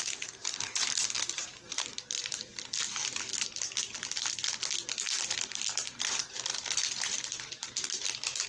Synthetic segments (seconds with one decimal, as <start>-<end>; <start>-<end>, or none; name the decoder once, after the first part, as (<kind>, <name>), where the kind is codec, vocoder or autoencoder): 0.0-2.5 (vocoder, BigVGAN v2); 5.2-8.5